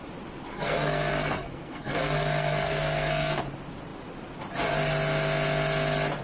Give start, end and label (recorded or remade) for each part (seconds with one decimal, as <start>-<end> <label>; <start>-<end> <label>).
0.0-0.5 recorded; 0.5-3.4 remade; 3.4-6.2 recorded